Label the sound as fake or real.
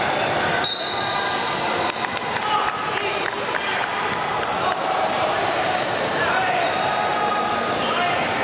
fake